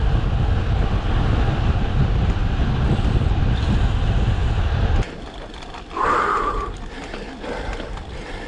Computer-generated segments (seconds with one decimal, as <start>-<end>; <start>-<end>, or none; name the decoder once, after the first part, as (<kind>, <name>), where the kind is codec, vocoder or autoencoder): 2.4-3.4 (vocoder, BigVGAN v2)